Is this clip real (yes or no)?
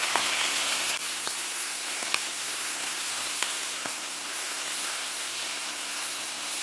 no